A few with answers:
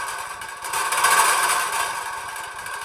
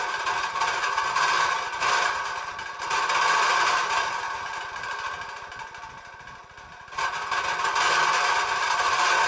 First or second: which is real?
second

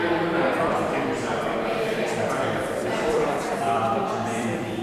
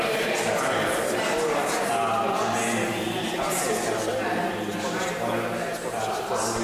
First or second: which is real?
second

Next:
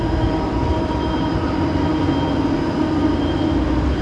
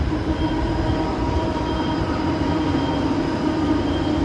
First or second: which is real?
first